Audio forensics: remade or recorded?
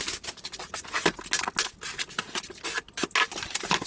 recorded